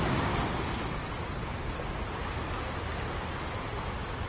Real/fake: real